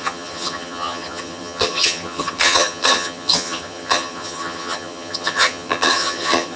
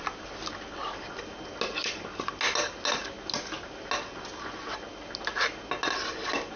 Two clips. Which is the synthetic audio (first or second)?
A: first